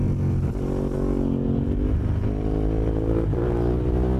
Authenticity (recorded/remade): recorded